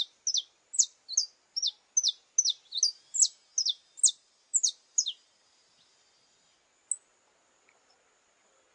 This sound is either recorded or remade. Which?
recorded